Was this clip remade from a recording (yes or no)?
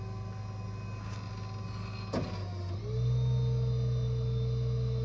no